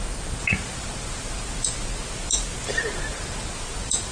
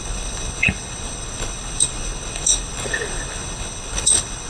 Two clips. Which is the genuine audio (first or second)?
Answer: first